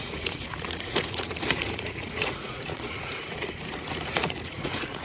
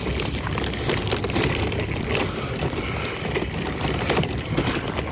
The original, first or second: second